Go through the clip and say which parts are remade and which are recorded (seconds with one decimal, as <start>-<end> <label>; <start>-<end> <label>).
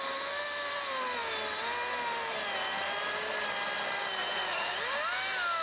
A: 0.0-4.2 recorded; 4.2-4.7 remade; 4.7-5.6 recorded